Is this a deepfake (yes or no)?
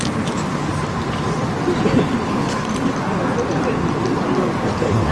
no